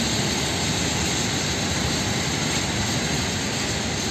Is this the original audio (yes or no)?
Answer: yes